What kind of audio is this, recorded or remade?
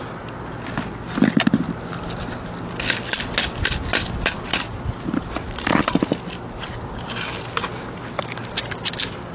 recorded